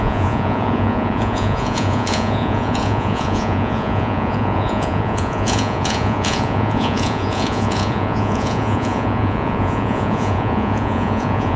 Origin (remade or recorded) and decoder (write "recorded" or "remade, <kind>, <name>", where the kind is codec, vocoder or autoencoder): remade, vocoder, Vocos